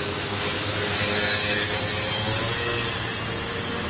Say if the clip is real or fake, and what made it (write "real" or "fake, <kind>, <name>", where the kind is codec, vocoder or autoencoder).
real